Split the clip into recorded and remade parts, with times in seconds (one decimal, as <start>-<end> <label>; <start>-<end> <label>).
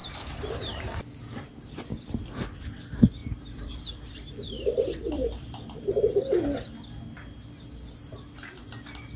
0.0-3.2 recorded; 3.2-6.1 remade; 6.1-9.2 recorded